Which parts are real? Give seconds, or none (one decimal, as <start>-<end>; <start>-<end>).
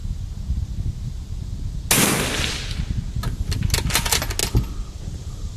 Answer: 0.0-5.6